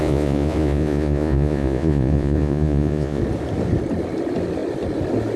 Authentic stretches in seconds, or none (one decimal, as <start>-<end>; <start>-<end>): 3.2-5.4